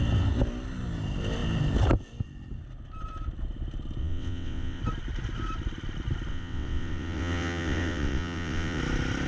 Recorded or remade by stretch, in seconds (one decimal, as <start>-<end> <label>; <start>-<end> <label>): 0.0-4.0 recorded; 4.0-4.8 remade; 4.8-6.3 recorded; 6.3-8.8 remade; 8.8-9.3 recorded